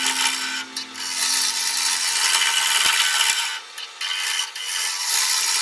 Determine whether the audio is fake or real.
real